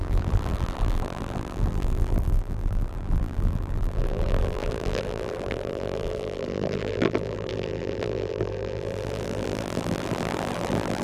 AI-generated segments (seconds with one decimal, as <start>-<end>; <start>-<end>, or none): 0.0-11.0